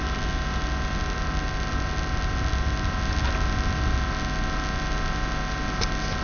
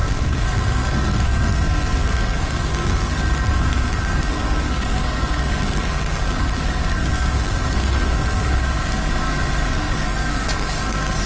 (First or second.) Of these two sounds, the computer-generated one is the second